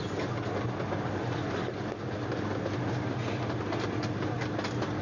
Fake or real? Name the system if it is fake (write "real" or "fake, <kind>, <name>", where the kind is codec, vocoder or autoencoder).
real